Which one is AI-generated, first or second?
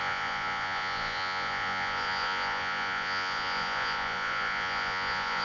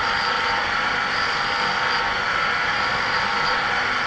first